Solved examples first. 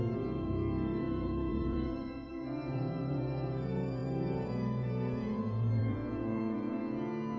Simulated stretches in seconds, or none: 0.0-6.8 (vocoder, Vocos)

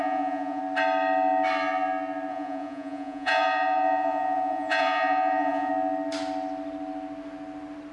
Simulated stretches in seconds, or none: 0.0-0.6 (vocoder, Vocos); 2.3-5.7